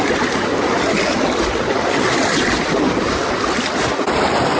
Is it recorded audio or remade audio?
remade